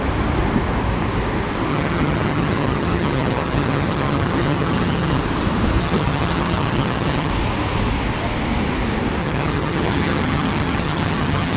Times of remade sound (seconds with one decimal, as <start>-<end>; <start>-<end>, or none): 1.7-5.2; 5.8-7.3; 9.2-11.6